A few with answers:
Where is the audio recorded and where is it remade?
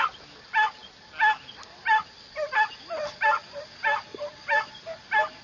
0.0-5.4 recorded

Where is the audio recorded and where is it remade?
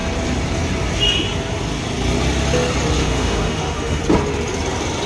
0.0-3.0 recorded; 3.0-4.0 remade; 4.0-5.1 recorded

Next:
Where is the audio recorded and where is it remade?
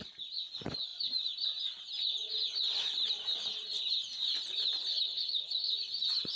0.0-4.9 recorded; 4.9-5.7 remade; 5.7-6.4 recorded